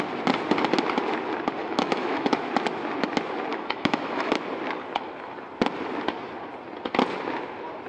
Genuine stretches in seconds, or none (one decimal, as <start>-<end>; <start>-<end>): 0.0-1.6; 2.3-3.5; 4.3-7.9